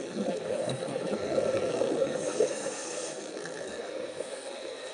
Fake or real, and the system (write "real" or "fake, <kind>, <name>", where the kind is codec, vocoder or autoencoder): fake, codec, SNAC